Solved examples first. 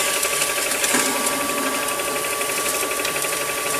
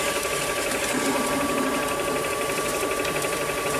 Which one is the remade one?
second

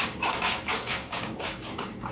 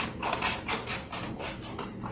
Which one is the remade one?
first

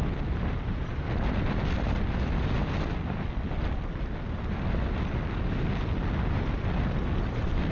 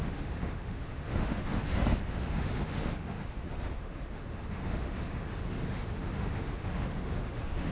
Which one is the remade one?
second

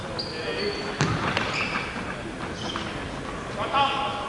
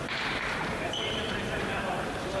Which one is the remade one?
second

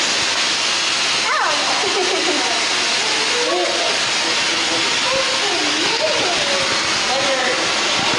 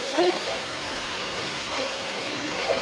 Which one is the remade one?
second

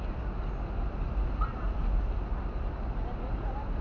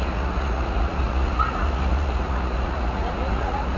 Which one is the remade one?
second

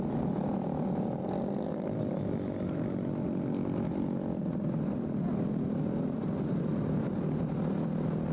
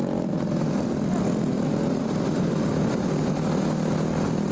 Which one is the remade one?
first